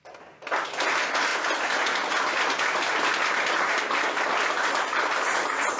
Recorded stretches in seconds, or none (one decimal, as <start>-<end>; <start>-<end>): 0.0-5.8